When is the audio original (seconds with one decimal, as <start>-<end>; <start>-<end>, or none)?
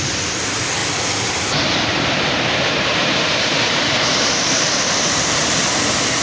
0.0-1.9; 5.6-6.2